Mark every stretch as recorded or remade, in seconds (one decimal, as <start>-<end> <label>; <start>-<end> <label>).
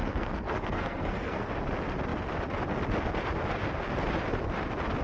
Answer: 0.0-1.5 remade; 1.5-5.0 recorded